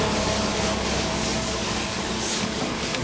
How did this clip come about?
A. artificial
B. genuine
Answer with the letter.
A